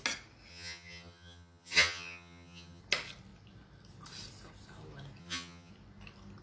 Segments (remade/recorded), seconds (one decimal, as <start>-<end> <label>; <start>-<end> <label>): 0.0-0.5 recorded; 0.5-2.8 remade; 2.8-5.2 recorded; 5.2-5.7 remade; 5.7-6.4 recorded